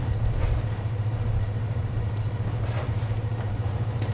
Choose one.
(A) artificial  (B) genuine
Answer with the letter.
A